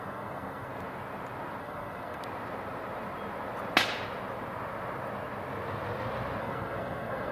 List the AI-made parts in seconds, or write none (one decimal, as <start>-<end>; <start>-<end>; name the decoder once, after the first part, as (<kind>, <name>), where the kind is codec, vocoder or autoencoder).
0.0-0.7 (codec, SNAC); 1.6-2.2; 6.4-7.3